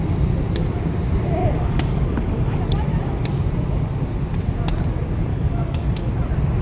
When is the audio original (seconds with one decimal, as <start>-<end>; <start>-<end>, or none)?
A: 0.0-1.4; 2.6-5.3; 6.1-6.6